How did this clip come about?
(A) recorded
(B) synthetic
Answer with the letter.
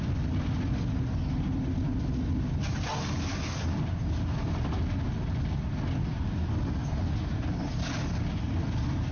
A